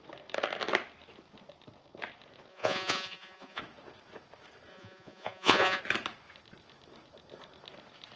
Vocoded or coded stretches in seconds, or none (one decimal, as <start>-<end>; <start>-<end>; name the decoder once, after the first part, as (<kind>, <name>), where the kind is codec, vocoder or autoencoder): 2.5-3.6 (vocoder, Vocos); 4.7-5.8